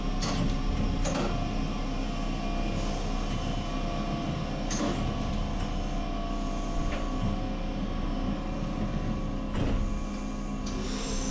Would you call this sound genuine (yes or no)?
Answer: yes